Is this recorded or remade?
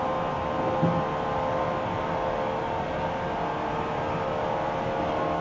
recorded